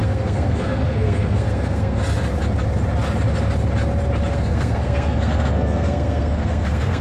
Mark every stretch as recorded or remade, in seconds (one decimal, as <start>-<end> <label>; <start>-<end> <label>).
0.0-2.0 remade; 2.0-4.3 recorded; 4.3-7.0 remade